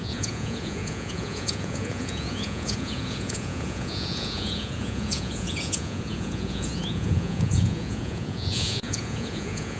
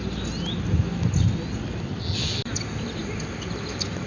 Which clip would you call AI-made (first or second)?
first